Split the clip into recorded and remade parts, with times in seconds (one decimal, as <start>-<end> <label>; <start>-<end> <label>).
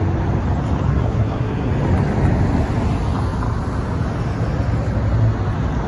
0.0-0.9 recorded; 0.9-1.7 remade; 1.7-5.9 recorded